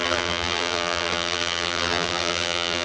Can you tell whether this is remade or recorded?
remade